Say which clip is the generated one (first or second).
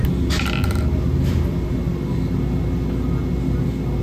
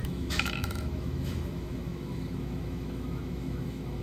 second